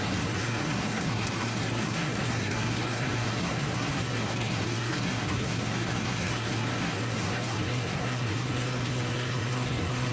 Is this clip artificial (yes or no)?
yes